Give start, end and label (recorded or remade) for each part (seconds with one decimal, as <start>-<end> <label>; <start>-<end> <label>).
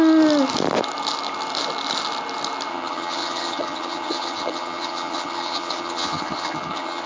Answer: 0.0-2.7 recorded; 2.7-7.1 remade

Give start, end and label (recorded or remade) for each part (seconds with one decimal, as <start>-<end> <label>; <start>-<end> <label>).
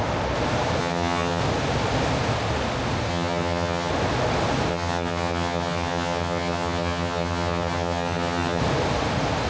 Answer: 0.0-0.8 recorded; 0.8-1.4 remade; 1.4-3.1 recorded; 3.1-3.9 remade; 3.9-4.7 recorded; 4.7-8.6 remade; 8.6-9.5 recorded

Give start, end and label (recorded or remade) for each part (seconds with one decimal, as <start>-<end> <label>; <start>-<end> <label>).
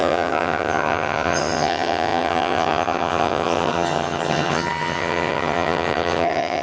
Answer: 0.0-6.6 remade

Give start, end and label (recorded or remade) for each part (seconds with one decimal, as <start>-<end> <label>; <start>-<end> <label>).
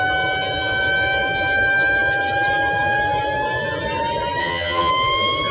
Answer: 0.0-4.4 recorded; 4.4-4.9 remade; 4.9-5.5 recorded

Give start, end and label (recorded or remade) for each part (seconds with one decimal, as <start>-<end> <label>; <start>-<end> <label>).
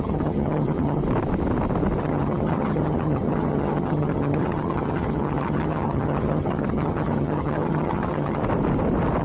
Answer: 0.0-1.0 remade; 1.0-2.0 recorded; 2.0-8.4 remade; 8.4-9.2 recorded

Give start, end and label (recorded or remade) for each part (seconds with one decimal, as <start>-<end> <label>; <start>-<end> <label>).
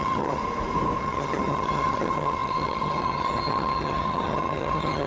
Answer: 0.0-0.4 remade; 0.4-1.0 recorded; 1.0-5.1 remade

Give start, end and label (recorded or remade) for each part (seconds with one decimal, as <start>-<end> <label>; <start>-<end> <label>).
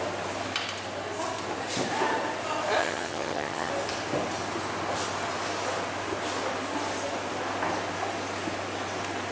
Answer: 0.0-2.8 recorded; 2.8-3.7 remade; 3.7-9.3 recorded